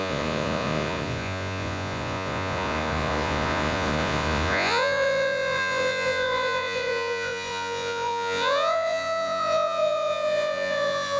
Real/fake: fake